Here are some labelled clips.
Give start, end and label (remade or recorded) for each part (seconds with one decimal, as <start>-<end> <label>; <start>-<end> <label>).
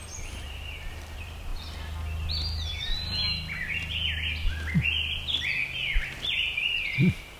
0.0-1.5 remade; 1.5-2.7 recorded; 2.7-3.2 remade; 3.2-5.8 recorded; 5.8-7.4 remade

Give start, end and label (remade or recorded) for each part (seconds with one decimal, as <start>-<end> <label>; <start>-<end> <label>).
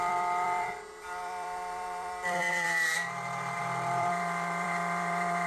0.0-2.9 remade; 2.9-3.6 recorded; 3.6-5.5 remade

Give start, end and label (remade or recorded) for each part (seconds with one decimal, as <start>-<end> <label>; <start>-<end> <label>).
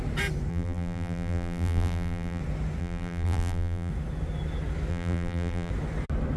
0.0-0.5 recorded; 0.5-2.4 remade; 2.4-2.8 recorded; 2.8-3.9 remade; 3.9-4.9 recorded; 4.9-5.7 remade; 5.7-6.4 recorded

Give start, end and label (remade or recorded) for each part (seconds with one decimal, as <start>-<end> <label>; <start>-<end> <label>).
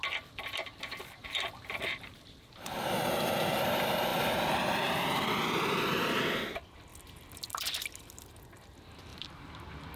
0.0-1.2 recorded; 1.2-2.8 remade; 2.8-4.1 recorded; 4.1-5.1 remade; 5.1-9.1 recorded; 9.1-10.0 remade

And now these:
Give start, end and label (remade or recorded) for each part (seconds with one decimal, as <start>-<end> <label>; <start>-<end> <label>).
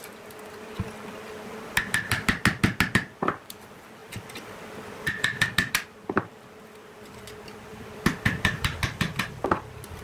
0.0-4.0 recorded; 4.0-4.6 remade; 4.6-7.7 recorded; 7.7-9.4 remade; 9.4-10.0 recorded